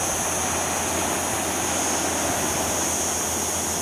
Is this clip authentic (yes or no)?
yes